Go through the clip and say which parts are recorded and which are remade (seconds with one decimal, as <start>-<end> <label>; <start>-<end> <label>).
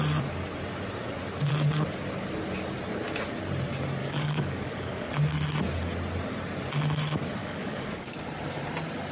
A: 0.0-4.0 recorded; 4.0-5.1 remade; 5.1-7.4 recorded; 7.4-8.2 remade; 8.2-9.1 recorded